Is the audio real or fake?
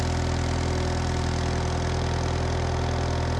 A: real